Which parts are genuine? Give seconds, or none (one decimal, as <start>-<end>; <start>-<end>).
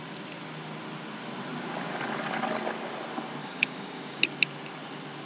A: 0.0-3.4; 4.2-5.3